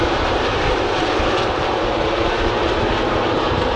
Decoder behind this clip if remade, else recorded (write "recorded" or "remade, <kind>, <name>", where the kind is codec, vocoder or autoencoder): remade, vocoder, BigVGAN v2